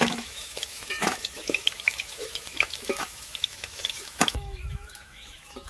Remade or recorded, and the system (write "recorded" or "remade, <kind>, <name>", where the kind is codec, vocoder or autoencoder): remade, autoencoder, DAC-VAE